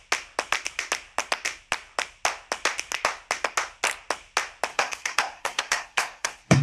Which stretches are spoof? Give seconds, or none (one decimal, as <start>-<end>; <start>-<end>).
4.7-6.6

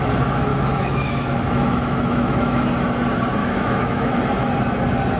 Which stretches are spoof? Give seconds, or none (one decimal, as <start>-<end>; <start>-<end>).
0.5-2.7; 3.4-4.2

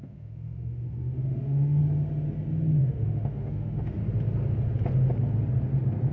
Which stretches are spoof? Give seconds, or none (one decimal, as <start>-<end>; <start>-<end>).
0.0-1.8; 2.8-4.0

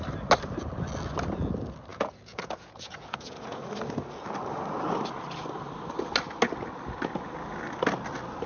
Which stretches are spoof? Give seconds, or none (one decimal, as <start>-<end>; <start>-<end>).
1.9-3.6

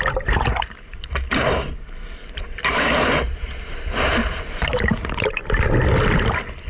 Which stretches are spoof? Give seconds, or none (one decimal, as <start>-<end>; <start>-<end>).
0.0-5.4

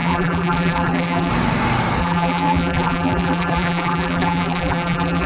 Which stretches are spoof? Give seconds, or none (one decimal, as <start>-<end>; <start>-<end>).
0.0-1.3; 2.0-5.3

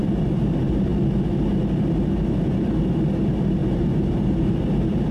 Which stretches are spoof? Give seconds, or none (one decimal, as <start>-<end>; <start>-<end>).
3.6-4.5

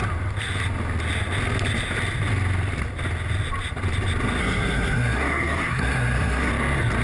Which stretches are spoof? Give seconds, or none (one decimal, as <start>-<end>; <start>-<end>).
4.4-6.5